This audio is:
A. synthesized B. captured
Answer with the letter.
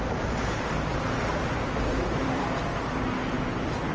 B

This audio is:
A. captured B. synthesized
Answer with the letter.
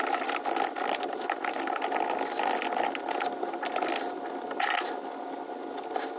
A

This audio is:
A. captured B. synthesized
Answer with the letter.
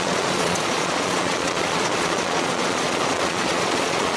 B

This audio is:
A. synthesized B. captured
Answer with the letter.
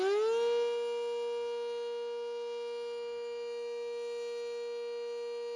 B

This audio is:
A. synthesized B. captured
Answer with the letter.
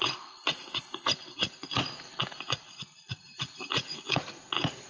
A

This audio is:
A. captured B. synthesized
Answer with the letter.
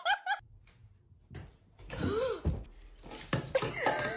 A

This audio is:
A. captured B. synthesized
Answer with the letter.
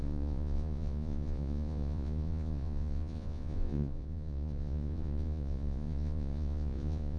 B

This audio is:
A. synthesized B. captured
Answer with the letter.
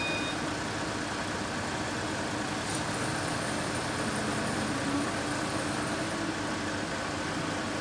B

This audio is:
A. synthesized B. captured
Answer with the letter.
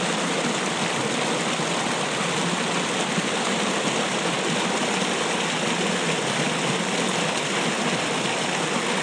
B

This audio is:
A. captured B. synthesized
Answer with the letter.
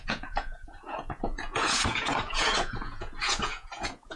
B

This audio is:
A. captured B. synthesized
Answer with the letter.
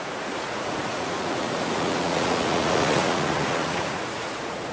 B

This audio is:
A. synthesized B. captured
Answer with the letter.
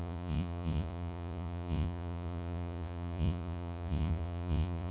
A